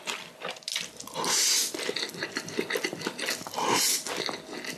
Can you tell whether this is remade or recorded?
recorded